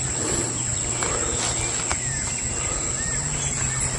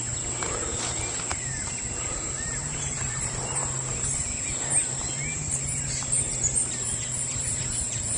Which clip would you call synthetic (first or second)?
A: second